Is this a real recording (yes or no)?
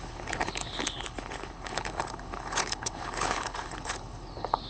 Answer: no